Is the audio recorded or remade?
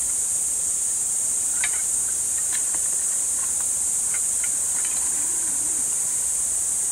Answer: remade